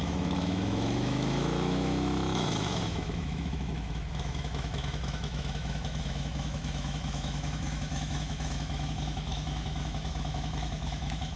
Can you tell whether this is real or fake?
fake